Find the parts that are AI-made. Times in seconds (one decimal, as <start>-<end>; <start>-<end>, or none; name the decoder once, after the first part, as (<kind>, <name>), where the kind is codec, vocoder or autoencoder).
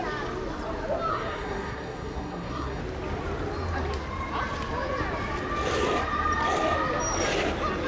1.1-2.8 (codec, SNAC)